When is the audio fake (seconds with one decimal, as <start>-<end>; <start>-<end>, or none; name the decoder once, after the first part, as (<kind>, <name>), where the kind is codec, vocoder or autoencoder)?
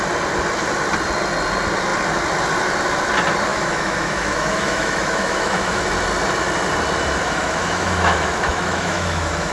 3.5-5.8 (autoencoder, DAC-VAE); 7.2-9.5